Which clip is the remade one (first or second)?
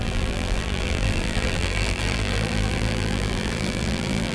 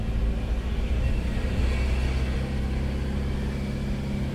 first